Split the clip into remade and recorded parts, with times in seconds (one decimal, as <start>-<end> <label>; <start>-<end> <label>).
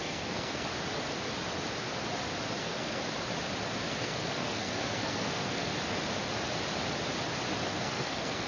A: 0.0-0.7 remade; 0.7-2.6 recorded; 2.6-3.0 remade; 3.0-3.9 recorded; 3.9-5.7 remade; 5.7-7.7 recorded; 7.7-8.5 remade